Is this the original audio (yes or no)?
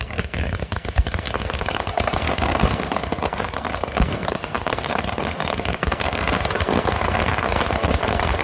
no